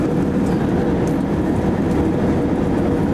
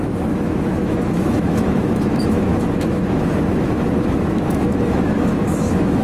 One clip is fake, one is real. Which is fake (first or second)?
second